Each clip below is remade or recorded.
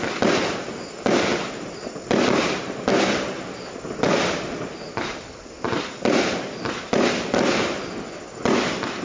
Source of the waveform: recorded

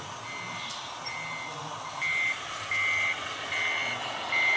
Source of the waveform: recorded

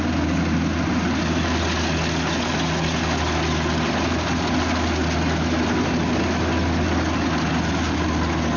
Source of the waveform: recorded